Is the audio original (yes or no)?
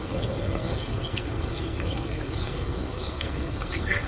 no